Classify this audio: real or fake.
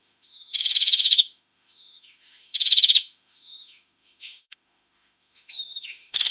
fake